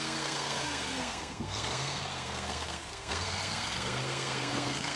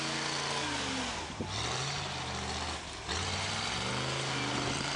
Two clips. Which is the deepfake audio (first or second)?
first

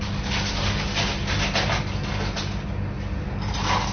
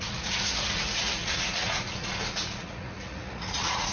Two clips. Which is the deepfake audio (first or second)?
second